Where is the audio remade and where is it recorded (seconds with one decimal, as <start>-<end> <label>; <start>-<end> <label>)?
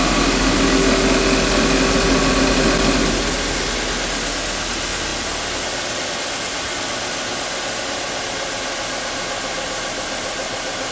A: 0.0-10.9 recorded